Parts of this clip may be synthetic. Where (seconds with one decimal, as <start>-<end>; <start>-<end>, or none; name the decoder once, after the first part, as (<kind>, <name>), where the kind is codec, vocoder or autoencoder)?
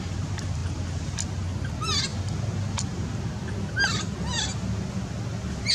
none